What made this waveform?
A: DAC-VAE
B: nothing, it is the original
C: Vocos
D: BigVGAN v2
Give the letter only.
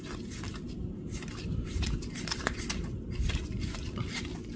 B